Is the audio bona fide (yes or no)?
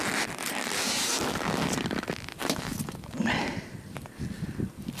yes